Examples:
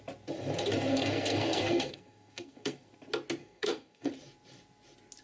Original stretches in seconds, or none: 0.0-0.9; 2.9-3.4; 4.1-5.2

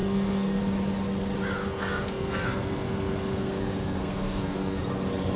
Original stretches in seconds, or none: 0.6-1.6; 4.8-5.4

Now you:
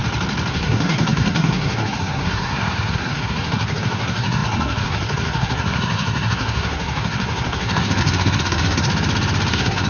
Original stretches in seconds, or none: 0.0-0.5; 8.9-9.5